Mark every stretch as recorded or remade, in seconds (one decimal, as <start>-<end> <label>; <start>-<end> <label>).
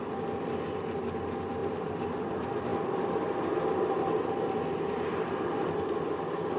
0.0-6.6 recorded